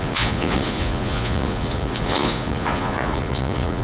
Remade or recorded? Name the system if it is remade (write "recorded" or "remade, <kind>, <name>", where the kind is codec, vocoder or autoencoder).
remade, vocoder, Vocos